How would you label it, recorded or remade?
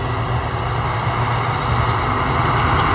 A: recorded